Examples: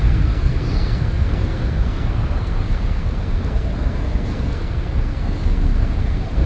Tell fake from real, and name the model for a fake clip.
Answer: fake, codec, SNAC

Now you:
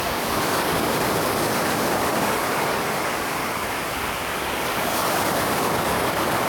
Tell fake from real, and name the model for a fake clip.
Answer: fake, codec, DAC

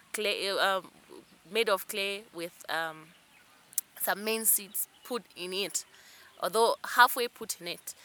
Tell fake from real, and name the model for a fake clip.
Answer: real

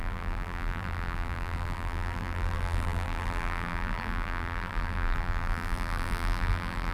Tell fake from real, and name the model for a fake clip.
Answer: fake, vocoder, BigVGAN v2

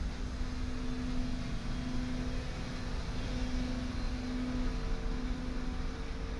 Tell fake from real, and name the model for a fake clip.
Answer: real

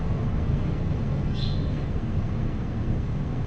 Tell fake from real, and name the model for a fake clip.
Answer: fake, codec, SNAC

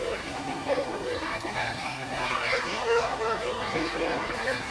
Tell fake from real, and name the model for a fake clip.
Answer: fake, codec, SNAC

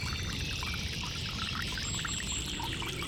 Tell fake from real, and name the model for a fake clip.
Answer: fake, vocoder, BigVGAN v2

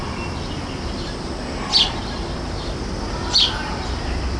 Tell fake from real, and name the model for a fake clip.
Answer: real